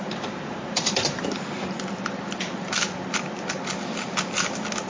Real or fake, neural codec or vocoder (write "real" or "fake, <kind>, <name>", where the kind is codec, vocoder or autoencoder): real